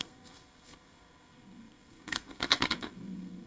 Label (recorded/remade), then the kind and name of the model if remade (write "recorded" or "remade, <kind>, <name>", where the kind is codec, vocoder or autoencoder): remade, codec, SNAC